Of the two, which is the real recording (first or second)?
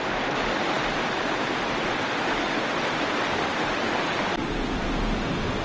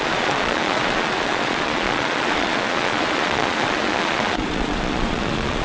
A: first